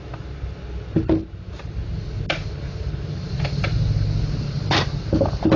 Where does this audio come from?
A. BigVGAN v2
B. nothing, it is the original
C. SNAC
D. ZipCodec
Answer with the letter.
B